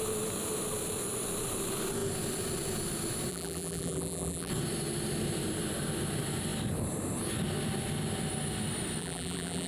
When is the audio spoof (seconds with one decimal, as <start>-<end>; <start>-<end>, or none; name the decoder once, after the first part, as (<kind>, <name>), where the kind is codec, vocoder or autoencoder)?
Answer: 3.3-4.5 (vocoder, BigVGAN v2); 9.0-9.7